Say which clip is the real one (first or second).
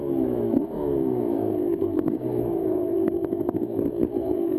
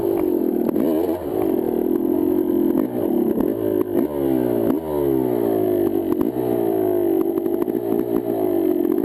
second